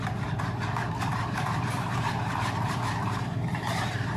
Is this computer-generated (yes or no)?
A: yes